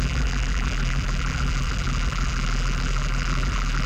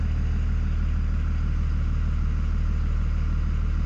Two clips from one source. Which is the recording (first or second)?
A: second